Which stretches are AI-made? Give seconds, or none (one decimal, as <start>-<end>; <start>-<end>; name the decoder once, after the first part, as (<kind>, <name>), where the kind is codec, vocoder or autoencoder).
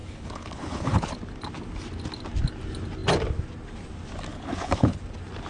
0.0-1.1 (codec, HILCodec); 4.3-5.0